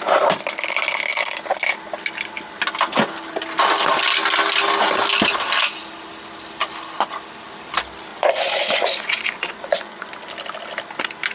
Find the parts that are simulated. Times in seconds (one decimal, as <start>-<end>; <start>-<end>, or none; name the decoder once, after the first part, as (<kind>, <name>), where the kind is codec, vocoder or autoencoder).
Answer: 8.1-10.1 (vocoder, Vocos)